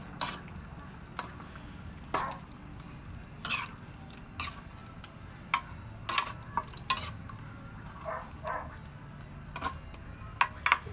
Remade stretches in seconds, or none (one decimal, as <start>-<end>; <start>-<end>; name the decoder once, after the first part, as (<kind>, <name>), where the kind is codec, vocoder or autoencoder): none